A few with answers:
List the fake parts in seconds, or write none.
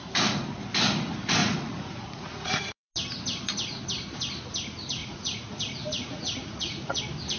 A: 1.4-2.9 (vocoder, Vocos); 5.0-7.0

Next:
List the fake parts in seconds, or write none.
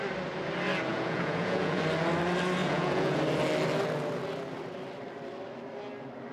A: 0.9-1.8 (vocoder, Vocos); 2.6-3.2